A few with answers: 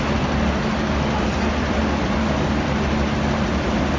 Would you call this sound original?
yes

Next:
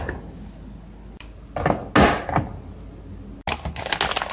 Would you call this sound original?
yes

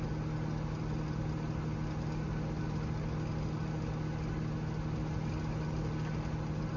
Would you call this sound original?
yes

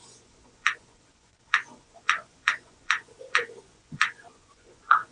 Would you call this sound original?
no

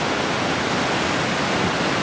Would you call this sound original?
yes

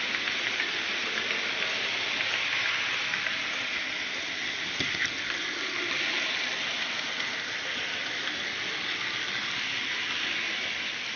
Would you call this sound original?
yes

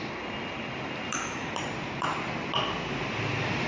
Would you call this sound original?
yes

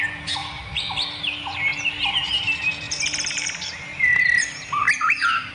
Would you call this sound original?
no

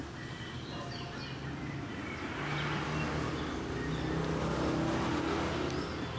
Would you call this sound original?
yes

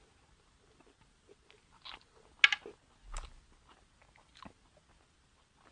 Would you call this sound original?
yes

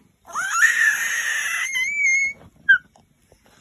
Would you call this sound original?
yes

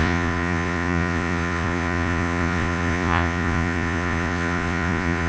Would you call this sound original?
no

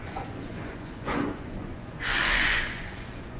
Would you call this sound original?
no